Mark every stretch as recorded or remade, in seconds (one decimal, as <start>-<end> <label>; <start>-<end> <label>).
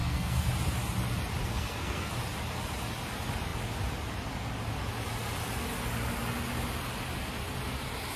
0.0-0.5 remade; 0.5-1.4 recorded; 1.4-2.1 remade; 2.1-8.2 recorded